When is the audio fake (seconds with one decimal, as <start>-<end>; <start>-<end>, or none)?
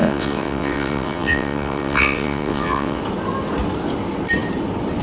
0.0-3.0